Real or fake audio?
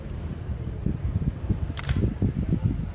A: fake